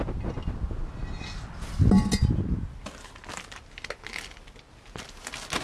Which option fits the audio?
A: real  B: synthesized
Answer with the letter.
A